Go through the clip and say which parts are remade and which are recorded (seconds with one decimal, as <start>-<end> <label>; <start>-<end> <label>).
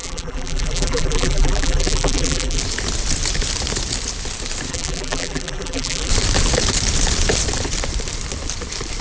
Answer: 0.0-2.6 remade; 2.6-4.7 recorded; 4.7-6.1 remade; 6.1-9.0 recorded